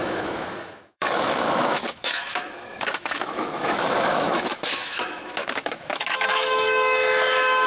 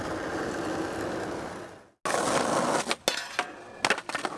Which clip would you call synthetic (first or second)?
first